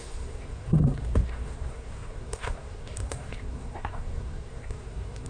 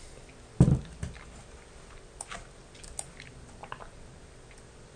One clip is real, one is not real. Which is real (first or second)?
second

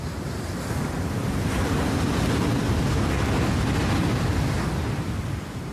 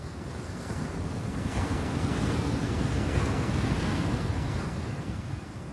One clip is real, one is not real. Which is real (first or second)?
first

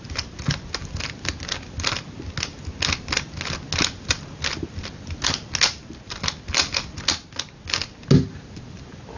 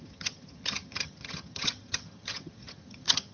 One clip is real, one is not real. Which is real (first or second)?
first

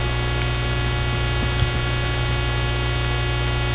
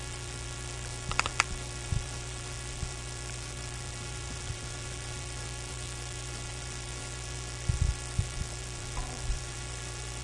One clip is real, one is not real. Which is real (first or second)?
first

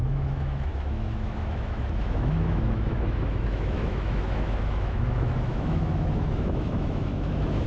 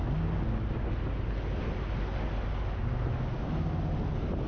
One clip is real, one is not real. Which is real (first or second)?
second